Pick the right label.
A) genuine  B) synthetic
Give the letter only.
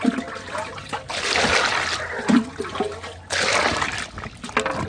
A